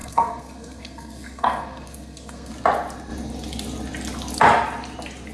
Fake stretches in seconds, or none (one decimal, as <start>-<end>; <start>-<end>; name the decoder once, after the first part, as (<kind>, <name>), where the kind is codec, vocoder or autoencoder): 0.0-2.5 (codec, SNAC)